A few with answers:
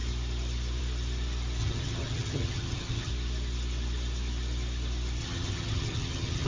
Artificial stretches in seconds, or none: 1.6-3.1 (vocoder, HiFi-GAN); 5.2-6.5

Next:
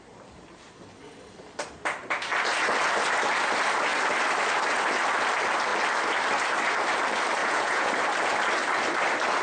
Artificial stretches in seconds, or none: 7.4-7.9 (vocoder, Vocos)

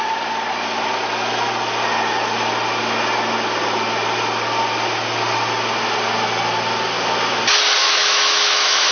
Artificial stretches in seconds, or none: 7.8-8.9 (autoencoder, DAC-VAE)

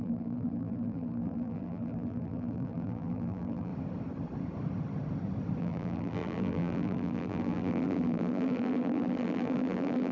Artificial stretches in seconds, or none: 0.0-3.7 (vocoder, BigVGAN v2); 5.6-10.1